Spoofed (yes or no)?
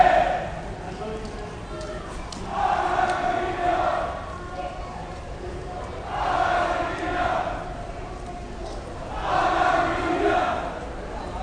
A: no